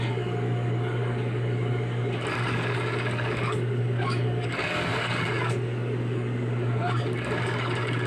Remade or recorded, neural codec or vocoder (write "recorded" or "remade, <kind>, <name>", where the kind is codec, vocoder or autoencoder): remade, codec, DAC